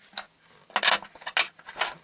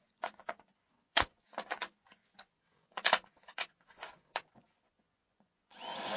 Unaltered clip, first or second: first